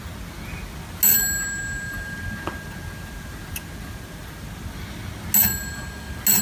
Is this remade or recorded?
recorded